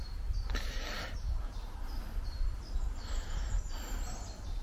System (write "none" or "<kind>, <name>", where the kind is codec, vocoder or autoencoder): vocoder, BigVGAN v2